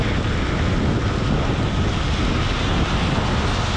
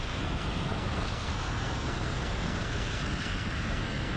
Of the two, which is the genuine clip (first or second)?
first